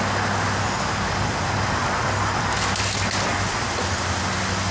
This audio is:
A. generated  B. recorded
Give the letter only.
B